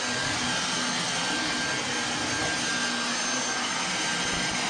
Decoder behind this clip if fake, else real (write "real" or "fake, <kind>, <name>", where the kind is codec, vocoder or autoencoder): real